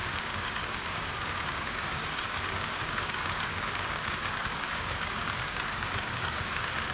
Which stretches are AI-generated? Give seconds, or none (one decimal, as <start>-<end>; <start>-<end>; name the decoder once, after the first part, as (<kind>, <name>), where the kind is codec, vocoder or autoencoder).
0.0-6.9 (codec, DAC)